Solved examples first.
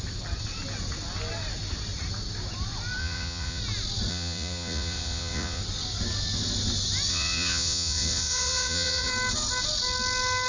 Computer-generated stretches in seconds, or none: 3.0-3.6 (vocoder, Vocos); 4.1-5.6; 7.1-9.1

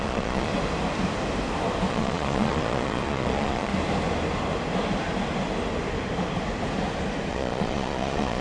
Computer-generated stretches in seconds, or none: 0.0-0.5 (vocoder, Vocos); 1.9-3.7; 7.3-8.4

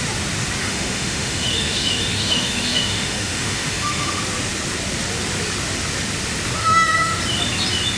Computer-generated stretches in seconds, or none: 0.6-4.2 (autoencoder, DAC-VAE); 6.6-7.2